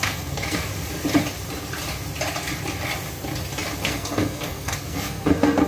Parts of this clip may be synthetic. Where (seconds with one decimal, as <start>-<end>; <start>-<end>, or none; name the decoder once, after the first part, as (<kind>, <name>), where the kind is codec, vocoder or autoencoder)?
0.0-0.7 (codec, SNAC); 3.8-5.7